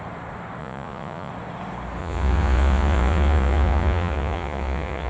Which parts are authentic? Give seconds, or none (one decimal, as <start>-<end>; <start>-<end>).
0.0-0.6; 1.3-2.0